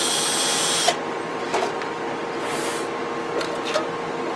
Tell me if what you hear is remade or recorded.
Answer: recorded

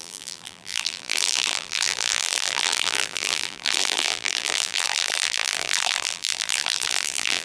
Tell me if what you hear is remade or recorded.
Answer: remade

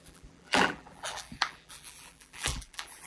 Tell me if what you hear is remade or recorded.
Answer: remade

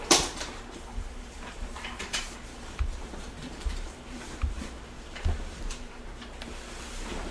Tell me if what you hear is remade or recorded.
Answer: remade